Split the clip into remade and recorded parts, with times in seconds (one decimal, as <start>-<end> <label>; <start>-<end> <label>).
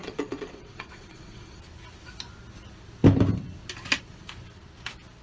0.0-1.6 remade; 1.6-5.2 recorded